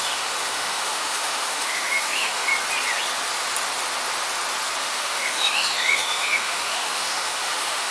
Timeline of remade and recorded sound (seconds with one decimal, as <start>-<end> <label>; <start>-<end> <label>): 0.0-2.5 remade; 2.5-4.8 recorded; 4.8-7.9 remade